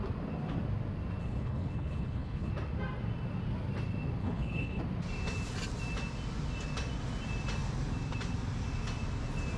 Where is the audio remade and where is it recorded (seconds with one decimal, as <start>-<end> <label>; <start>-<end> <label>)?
0.0-1.2 recorded; 1.2-2.5 remade; 2.5-4.2 recorded; 4.2-4.8 remade; 4.8-9.6 recorded

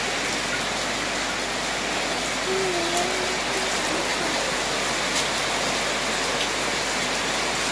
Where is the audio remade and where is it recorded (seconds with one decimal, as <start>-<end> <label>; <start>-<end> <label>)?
0.0-7.7 recorded

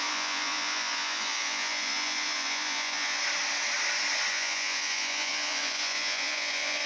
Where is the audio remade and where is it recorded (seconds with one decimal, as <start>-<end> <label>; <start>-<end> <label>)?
0.0-3.2 remade; 3.2-4.3 recorded; 4.3-6.9 remade

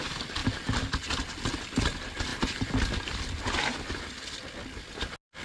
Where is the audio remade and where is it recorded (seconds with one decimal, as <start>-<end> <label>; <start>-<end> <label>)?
0.0-5.4 recorded